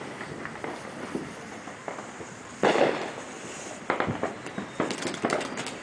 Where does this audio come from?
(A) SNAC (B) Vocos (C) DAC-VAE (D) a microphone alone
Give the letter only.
D